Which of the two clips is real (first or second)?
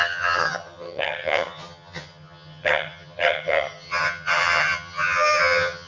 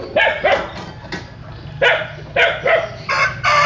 second